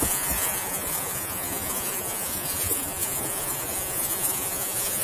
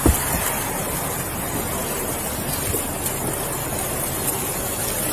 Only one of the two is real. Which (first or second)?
second